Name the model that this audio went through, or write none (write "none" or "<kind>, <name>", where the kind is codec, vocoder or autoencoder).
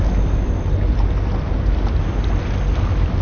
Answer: none